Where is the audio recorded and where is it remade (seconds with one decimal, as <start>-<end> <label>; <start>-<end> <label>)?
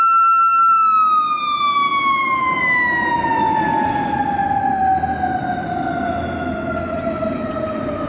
0.0-1.9 recorded; 1.9-2.6 remade; 2.6-8.1 recorded